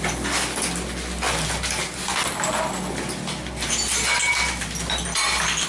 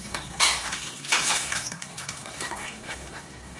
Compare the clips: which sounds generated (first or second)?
second